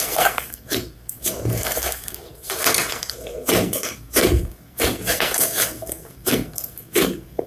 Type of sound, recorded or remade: remade